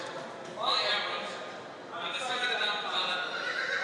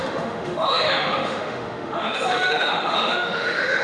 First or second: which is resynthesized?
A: second